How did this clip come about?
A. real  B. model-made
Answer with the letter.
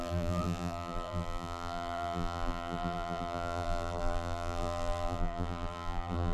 B